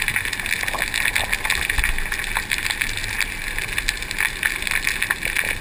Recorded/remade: recorded